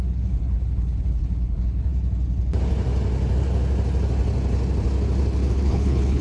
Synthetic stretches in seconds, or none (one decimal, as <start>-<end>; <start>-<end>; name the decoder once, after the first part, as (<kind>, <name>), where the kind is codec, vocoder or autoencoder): 0.0-1.9 (codec, HILCodec); 5.5-6.2